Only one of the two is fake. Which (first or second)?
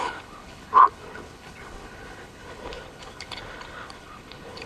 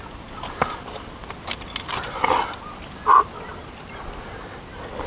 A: first